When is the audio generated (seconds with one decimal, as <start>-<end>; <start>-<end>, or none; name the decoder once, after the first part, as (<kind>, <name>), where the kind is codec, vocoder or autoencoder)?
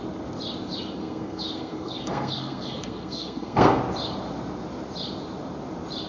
1.0-3.8 (codec, SNAC)